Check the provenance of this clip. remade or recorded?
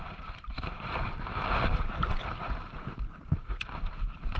remade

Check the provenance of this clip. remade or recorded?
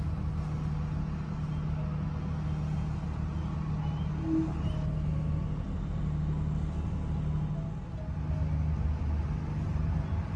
recorded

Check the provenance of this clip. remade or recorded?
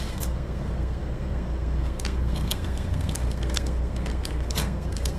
remade